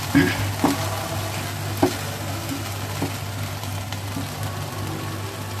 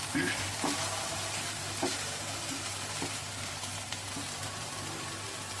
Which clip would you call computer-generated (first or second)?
second